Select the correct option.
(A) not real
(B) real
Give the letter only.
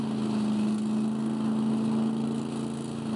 B